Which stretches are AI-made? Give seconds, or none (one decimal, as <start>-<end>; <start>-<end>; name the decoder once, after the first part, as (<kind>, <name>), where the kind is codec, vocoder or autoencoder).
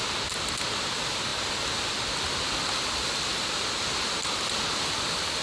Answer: none